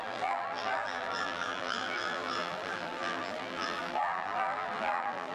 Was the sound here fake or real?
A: fake